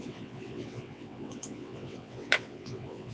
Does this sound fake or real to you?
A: fake